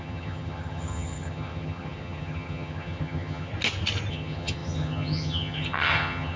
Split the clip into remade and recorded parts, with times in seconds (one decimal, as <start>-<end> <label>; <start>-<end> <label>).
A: 0.0-3.5 remade; 3.5-4.1 recorded; 4.1-6.4 remade